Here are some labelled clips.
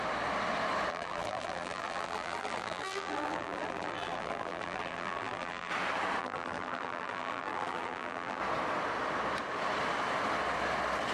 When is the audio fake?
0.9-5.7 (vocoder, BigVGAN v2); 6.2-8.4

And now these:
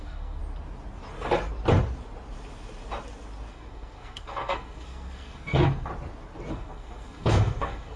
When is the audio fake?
0.0-0.4 (codec, SNAC); 3.5-5.9; 6.5-8.0

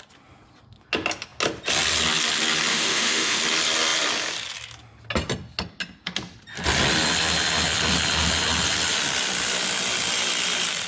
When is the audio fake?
2.7-3.4 (autoencoder, DAC-VAE)

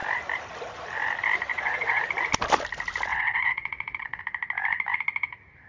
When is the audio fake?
1.5-2.0 (vocoder, Vocos); 3.1-4.2

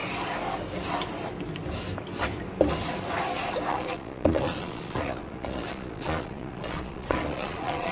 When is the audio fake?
3.7-7.9 (vocoder, Vocos)

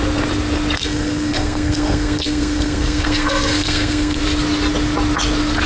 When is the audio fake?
0.8-4.2 (codec, SNAC)